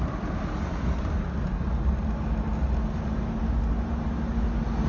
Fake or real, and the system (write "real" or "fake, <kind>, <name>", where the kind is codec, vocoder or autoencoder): real